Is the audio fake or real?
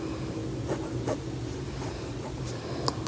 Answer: real